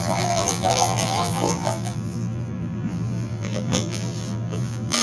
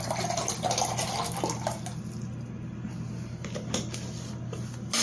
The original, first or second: second